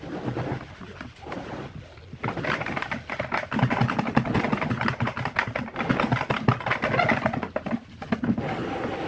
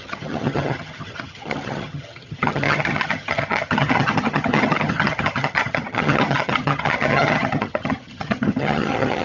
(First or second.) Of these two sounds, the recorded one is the first